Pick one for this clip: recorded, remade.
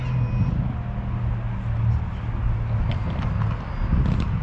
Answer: recorded